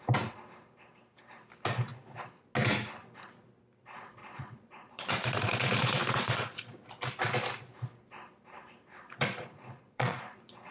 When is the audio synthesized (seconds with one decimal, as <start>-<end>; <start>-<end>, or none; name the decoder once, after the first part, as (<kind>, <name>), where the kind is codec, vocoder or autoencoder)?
4.2-6.9 (vocoder, Vocos); 9.0-10.7